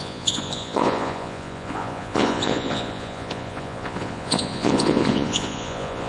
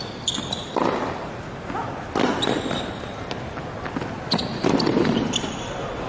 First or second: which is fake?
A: first